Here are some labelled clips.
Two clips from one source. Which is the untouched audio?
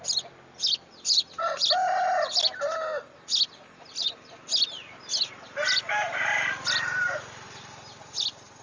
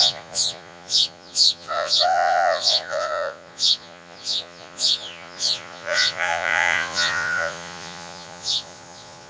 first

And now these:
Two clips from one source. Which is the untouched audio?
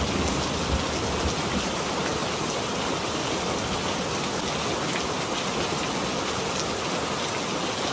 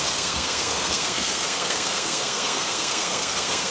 first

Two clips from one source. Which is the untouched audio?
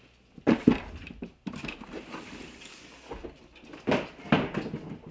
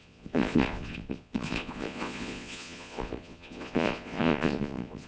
first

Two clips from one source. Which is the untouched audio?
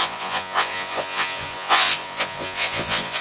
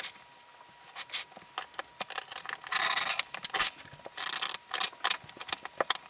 second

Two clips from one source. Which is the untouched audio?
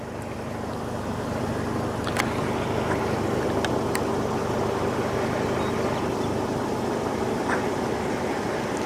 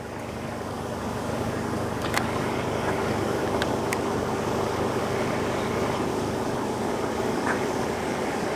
first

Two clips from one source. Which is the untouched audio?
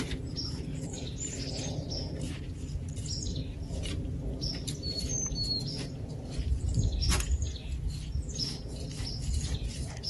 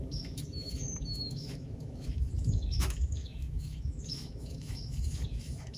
first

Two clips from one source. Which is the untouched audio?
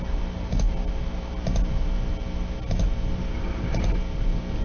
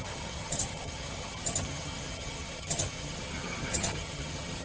first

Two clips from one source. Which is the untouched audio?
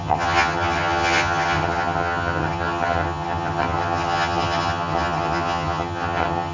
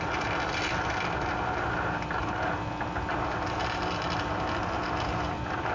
second